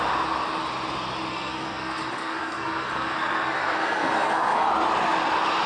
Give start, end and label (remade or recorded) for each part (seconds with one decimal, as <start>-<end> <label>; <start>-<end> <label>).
0.0-1.3 recorded; 1.3-4.7 remade; 4.7-5.7 recorded